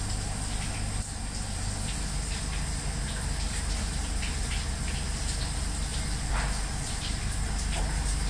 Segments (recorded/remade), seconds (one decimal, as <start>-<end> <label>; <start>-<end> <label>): 0.0-8.3 recorded